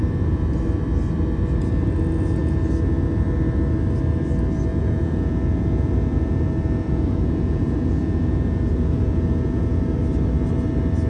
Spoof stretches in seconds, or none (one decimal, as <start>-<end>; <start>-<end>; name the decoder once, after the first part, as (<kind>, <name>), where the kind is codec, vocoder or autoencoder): 4.7-9.8 (vocoder, Vocos)